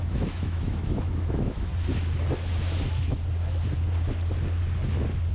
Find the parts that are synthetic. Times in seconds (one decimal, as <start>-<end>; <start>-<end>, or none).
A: 0.0-1.7